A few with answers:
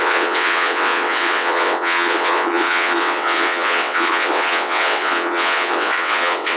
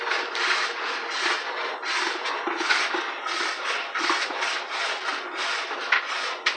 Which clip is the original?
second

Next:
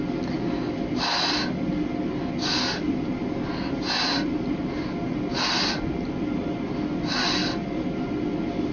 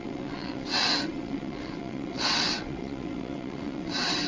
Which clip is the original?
first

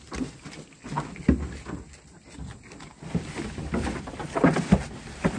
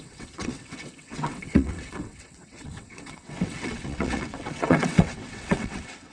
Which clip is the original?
first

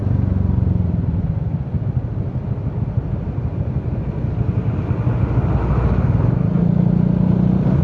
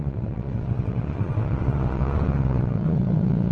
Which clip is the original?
first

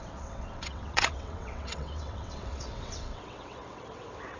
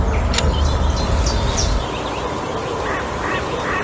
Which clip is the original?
second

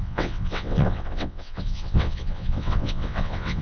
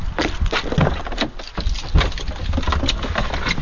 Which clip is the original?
second